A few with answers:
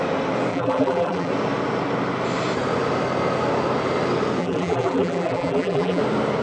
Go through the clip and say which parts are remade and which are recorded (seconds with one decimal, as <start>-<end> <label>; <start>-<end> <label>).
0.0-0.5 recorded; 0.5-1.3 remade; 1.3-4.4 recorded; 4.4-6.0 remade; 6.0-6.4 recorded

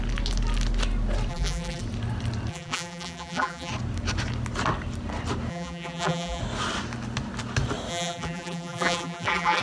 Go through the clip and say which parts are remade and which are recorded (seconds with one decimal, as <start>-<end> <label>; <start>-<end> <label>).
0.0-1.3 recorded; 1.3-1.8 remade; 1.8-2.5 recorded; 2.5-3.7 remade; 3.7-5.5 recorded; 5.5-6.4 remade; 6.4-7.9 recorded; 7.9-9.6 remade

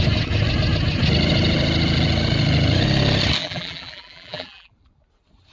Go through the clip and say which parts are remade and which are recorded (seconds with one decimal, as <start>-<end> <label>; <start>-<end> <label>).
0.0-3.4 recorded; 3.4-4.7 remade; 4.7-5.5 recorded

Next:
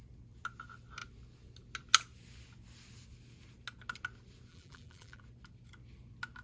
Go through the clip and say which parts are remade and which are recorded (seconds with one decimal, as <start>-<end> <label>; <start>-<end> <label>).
0.0-4.5 recorded; 4.5-5.2 remade; 5.2-6.4 recorded

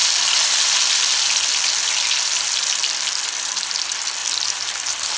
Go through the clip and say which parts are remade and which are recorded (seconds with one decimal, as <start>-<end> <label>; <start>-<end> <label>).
0.0-5.2 recorded

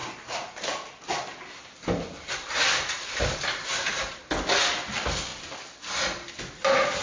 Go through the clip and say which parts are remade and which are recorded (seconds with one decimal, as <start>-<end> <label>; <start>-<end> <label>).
0.0-0.7 remade; 0.7-1.3 recorded; 1.3-4.2 remade; 4.2-7.0 recorded